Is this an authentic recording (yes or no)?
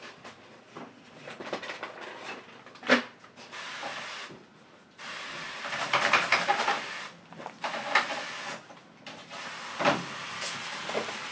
yes